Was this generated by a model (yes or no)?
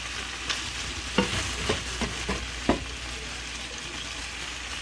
no